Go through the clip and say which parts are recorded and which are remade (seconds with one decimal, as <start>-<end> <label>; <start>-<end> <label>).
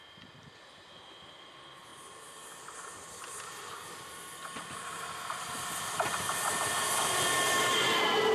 0.0-8.3 recorded